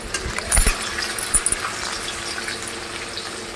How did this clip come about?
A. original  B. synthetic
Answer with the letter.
A